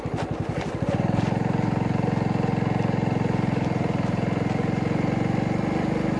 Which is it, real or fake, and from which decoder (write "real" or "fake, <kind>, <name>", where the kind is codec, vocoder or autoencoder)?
real